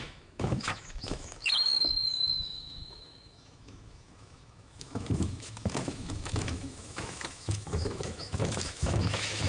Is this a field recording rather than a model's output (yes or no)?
no